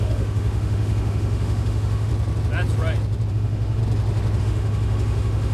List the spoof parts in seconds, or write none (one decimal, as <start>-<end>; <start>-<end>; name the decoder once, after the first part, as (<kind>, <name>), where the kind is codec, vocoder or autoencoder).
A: 0.0-2.1 (autoencoder, DAC-VAE); 3.3-3.8; 4.4-5.5